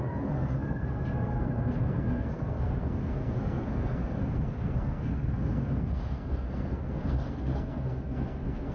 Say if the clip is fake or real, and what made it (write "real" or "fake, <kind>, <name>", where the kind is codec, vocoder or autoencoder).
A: fake, codec, SNAC